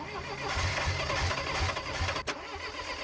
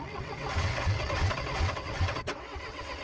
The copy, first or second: second